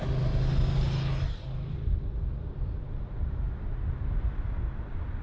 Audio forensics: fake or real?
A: real